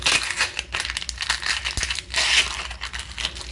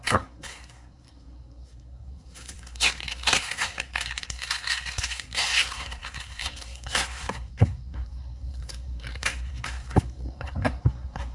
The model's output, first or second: second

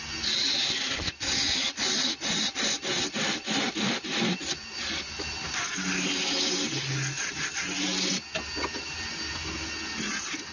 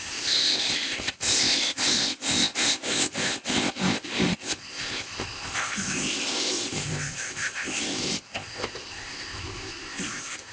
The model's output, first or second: second